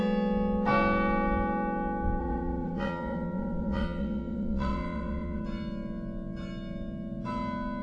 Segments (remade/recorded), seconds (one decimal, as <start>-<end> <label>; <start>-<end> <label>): 0.0-2.2 recorded; 2.2-5.4 remade; 5.4-7.8 recorded

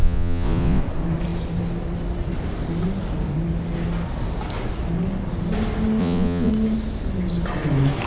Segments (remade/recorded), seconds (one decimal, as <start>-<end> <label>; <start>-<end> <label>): 0.0-0.8 remade; 0.8-6.0 recorded; 6.0-6.5 remade; 6.5-8.1 recorded

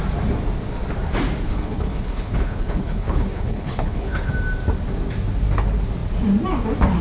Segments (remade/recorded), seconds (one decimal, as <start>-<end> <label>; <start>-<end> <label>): 0.0-1.5 recorded; 1.5-4.3 remade; 4.3-7.0 recorded

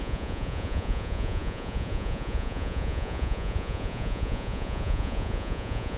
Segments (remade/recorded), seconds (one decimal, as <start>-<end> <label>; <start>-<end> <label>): 0.0-6.0 remade

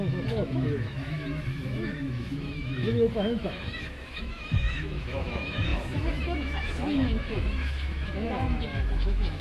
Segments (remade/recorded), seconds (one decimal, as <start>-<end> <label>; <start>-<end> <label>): 0.0-9.4 remade

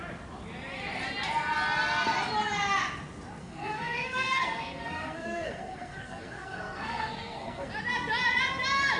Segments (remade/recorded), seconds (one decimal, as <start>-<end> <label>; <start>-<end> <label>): 0.0-3.4 recorded; 3.4-7.7 remade; 7.7-9.0 recorded

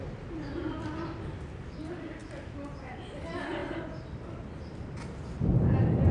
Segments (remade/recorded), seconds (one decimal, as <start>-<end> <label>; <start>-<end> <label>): 0.0-6.1 recorded